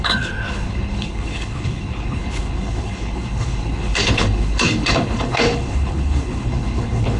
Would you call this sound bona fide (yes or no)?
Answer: no